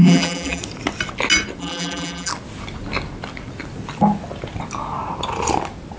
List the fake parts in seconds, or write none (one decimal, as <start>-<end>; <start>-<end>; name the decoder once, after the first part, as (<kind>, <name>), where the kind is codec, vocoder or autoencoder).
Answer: 0.0-0.6 (vocoder, BigVGAN v2); 1.6-2.3